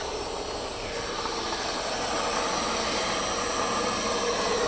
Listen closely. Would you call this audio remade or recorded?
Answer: recorded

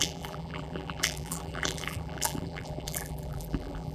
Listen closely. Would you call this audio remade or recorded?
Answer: remade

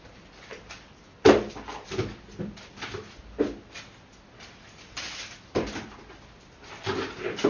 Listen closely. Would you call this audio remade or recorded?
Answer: recorded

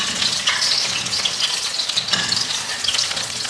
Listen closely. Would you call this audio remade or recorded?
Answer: remade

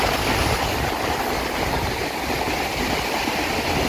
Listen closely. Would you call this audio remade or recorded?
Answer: recorded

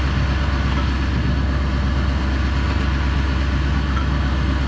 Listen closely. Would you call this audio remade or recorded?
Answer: recorded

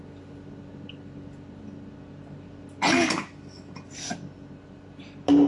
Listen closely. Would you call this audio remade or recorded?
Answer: recorded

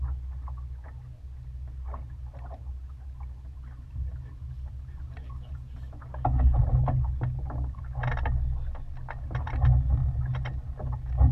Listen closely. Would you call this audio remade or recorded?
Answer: recorded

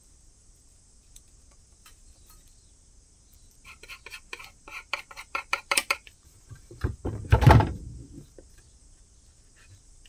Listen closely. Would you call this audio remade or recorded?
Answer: remade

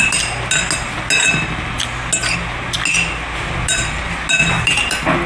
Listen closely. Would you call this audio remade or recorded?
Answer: recorded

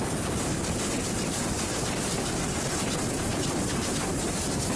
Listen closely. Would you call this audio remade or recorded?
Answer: recorded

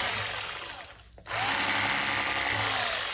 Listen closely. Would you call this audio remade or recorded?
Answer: recorded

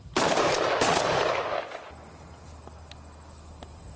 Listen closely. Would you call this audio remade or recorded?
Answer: recorded